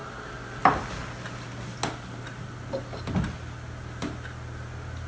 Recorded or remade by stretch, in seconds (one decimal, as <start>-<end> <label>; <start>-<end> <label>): 0.0-5.1 recorded